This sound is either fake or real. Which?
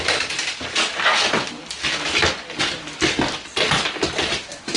real